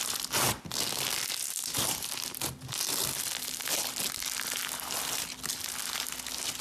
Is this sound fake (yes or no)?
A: no